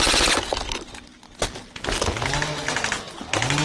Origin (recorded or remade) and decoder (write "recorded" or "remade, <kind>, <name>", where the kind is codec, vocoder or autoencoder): recorded